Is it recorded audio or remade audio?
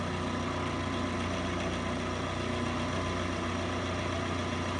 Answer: recorded